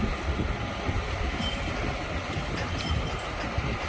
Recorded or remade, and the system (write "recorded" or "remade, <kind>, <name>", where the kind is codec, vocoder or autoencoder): recorded